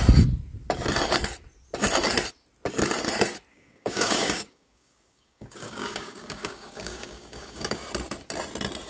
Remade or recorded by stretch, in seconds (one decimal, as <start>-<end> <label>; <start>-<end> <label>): 0.0-3.5 recorded; 3.5-7.8 remade; 7.8-8.9 recorded